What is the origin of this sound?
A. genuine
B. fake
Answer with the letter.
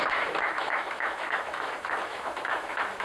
B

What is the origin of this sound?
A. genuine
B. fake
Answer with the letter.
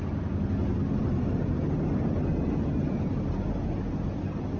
A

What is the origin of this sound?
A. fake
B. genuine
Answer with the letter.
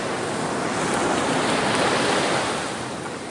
B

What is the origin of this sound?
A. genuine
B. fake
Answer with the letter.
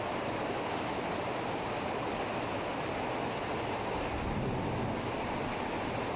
A